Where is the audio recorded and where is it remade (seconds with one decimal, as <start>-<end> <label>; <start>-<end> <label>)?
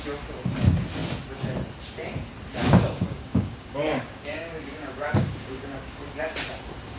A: 0.0-2.6 recorded; 2.6-6.0 remade; 6.0-7.0 recorded